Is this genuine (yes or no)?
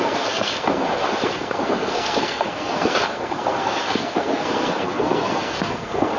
no